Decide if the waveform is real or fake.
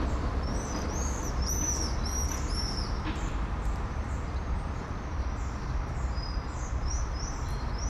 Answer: fake